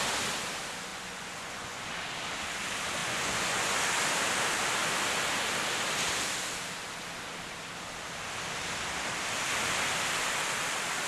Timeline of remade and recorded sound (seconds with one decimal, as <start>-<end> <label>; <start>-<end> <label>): 0.0-0.9 recorded; 0.9-1.8 remade; 1.8-3.0 recorded; 3.0-3.8 remade; 3.8-11.1 recorded